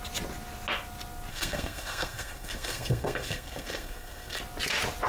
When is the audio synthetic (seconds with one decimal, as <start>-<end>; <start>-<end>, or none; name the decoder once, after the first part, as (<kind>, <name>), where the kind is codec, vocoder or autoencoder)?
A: 1.3-4.4 (codec, SNAC)